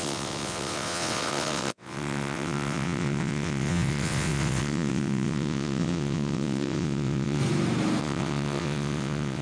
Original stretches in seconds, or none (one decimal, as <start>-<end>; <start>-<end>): 7.4-8.0